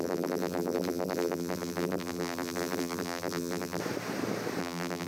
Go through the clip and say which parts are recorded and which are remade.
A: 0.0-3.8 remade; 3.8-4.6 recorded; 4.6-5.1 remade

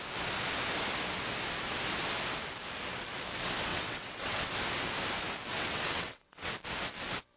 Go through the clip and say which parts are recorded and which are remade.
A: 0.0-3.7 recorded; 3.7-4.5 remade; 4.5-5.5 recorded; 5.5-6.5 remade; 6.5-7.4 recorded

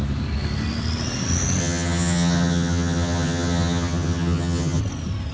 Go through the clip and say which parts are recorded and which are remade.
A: 0.0-1.6 recorded; 1.6-4.8 remade; 4.8-5.3 recorded

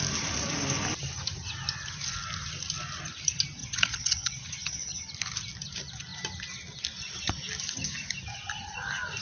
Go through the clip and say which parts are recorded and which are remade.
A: 0.0-3.6 recorded; 3.6-5.0 remade; 5.0-9.2 recorded

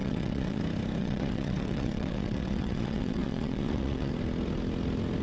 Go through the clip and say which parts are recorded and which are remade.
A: 0.0-0.6 remade; 0.6-1.0 recorded; 1.0-4.1 remade; 4.1-5.2 recorded

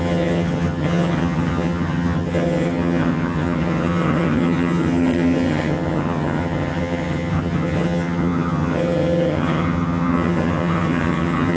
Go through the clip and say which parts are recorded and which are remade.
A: 0.0-11.6 remade

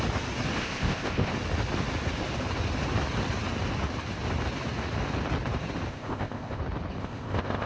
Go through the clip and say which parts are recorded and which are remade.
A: 0.0-0.6 recorded; 0.6-1.3 remade; 1.3-5.9 recorded; 5.9-6.6 remade; 6.6-7.0 recorded; 7.0-7.7 remade